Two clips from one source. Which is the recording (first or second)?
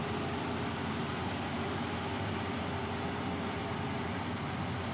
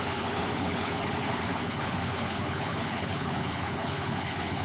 first